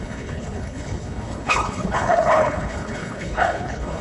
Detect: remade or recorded remade